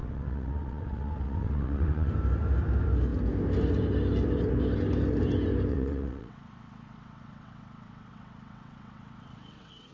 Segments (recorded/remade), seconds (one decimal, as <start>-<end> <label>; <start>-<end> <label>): 0.0-2.1 remade; 2.1-5.7 recorded; 5.7-9.9 remade